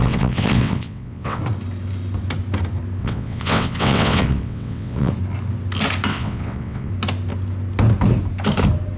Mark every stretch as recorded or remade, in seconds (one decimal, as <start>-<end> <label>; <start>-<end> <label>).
0.0-1.4 remade; 1.4-3.0 recorded; 3.0-5.1 remade; 5.1-6.1 recorded; 6.1-6.9 remade; 6.9-9.0 recorded